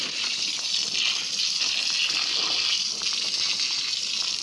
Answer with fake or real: real